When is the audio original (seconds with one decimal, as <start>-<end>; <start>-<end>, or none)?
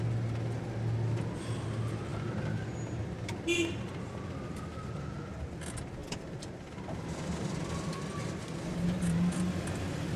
0.0-2.1; 2.6-10.2